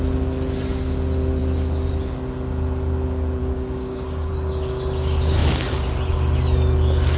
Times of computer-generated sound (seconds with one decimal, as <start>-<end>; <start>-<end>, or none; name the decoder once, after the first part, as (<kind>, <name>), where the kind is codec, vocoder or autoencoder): 3.4-4.3 (codec, DAC)